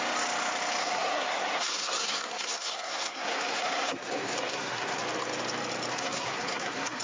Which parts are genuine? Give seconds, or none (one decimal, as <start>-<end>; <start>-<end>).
0.0-0.8; 5.0-5.9